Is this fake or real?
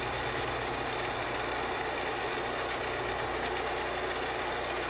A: real